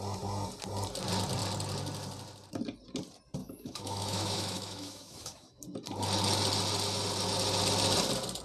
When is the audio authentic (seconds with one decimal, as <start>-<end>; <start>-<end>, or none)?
0.0-3.4; 5.6-8.4